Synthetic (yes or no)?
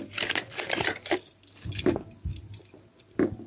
no